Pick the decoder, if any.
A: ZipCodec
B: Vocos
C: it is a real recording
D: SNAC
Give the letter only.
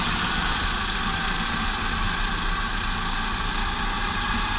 C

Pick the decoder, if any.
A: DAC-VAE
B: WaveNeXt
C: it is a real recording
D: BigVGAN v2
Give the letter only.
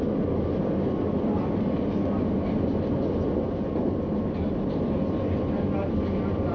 C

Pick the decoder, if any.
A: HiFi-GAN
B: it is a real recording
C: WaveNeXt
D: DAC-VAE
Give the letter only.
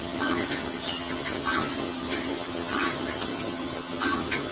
A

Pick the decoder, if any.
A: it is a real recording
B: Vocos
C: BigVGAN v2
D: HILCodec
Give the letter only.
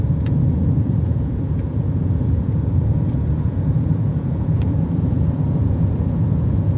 B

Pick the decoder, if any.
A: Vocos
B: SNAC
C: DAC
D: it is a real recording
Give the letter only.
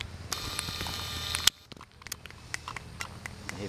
D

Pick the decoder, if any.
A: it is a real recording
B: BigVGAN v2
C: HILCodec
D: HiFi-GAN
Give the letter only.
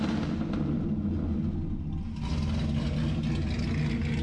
A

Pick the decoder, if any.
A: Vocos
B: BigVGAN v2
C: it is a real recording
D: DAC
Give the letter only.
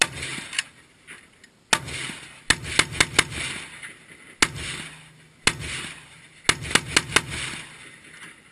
C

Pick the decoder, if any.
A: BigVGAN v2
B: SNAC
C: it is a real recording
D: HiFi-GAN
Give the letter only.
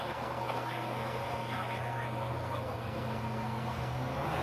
B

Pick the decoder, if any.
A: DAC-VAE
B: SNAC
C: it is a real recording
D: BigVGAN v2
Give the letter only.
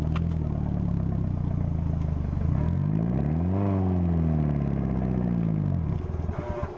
C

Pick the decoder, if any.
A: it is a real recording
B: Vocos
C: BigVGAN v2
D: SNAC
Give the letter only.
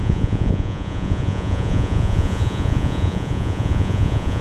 B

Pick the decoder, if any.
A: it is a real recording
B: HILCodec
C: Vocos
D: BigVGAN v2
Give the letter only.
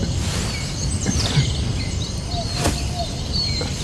D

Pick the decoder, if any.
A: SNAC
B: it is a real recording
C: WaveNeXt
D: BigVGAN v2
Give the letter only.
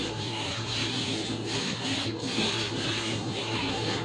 A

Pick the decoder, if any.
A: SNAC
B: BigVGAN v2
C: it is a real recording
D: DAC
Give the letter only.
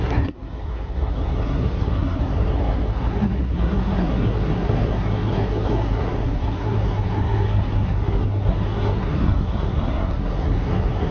A